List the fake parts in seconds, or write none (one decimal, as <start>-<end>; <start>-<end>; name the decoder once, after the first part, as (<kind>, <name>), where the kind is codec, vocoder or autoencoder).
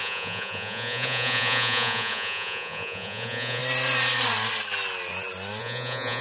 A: 0.0-3.6 (vocoder, Vocos); 5.6-6.2